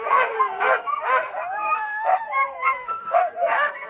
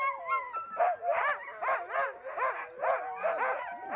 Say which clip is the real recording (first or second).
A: second